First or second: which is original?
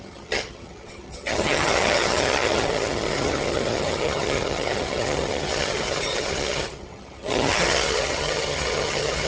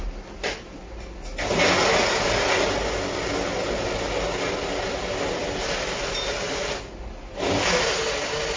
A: second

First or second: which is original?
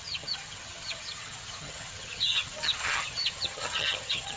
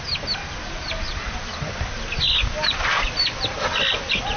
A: second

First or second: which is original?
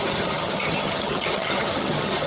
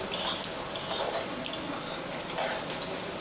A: second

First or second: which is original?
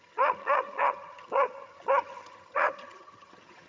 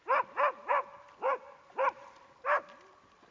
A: second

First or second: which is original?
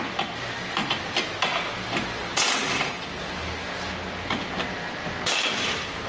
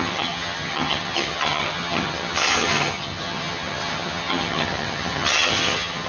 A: first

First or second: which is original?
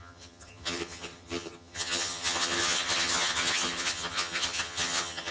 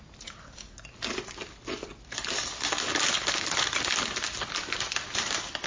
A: second